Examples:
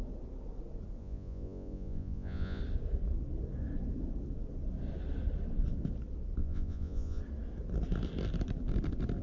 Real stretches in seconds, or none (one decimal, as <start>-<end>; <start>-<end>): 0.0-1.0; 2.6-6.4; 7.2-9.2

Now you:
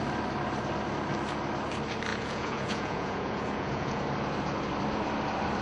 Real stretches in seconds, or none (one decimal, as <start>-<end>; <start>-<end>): 0.0-2.1; 4.0-5.6

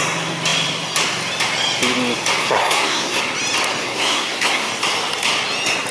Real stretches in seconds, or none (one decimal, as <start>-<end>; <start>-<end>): 0.0-2.4; 3.2-3.8; 4.7-5.9

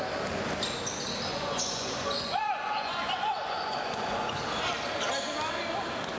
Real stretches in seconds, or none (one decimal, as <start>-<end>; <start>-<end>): 0.0-1.3; 4.4-6.2

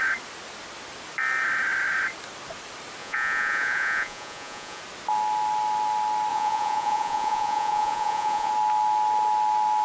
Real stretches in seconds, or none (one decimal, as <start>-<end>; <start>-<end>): 0.0-3.0; 4.8-6.3; 8.5-9.8